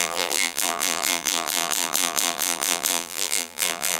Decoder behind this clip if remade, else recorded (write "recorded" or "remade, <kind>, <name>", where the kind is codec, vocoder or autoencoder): remade, vocoder, BigVGAN v2